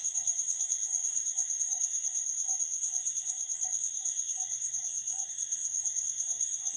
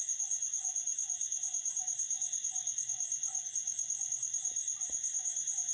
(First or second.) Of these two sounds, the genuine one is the second